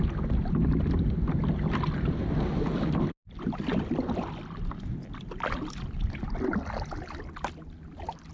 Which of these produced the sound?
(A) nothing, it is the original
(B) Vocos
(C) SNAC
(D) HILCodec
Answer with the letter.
A